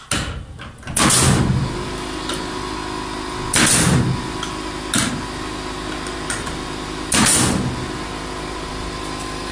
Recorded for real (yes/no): yes